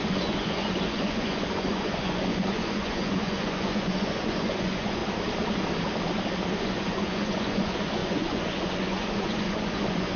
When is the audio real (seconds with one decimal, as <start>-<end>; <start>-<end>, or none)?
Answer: 5.0-6.6